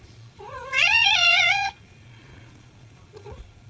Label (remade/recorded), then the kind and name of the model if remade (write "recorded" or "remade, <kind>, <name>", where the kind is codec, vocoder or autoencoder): remade, vocoder, Vocos